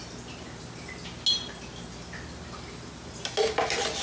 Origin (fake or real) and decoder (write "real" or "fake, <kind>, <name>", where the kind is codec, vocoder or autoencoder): real